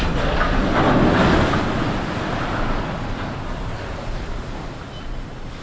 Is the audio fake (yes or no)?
no